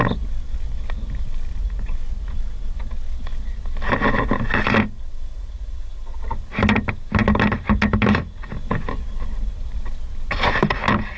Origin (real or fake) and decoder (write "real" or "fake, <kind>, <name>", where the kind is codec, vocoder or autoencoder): real